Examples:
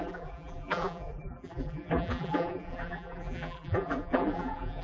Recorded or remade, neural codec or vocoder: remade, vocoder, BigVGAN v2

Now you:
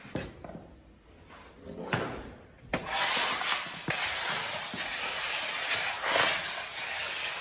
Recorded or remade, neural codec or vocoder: recorded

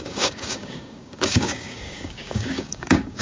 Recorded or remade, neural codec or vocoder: remade, codec, DAC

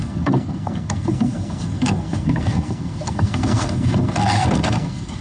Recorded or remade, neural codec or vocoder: remade, codec, SNAC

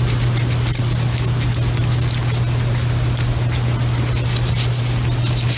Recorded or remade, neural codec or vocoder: recorded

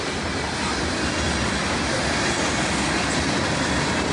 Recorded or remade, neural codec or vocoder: recorded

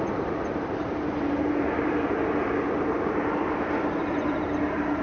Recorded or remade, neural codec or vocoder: remade, vocoder, BigVGAN v2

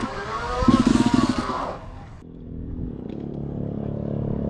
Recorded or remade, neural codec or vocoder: remade, codec, DAC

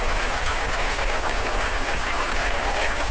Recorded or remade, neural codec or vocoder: remade, codec, DAC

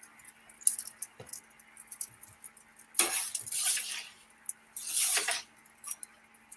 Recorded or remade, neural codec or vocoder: recorded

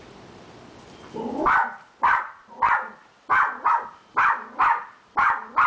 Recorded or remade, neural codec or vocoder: recorded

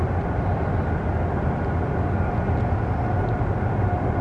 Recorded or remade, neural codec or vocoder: recorded